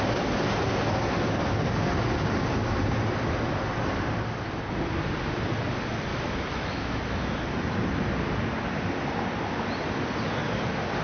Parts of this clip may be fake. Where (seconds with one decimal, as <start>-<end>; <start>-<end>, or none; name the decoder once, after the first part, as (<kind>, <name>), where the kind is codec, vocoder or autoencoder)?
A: 6.1-7.3 (autoencoder, DAC-VAE)